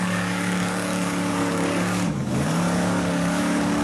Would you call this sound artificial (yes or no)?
yes